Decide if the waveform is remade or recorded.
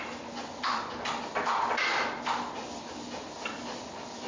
recorded